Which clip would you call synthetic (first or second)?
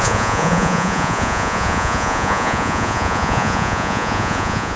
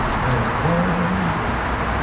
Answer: first